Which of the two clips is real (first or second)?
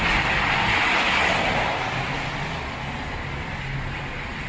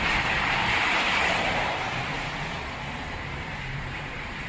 first